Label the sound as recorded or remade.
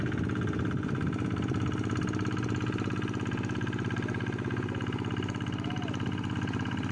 recorded